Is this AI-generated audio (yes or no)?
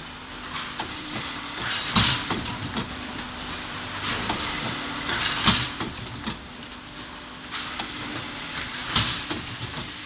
yes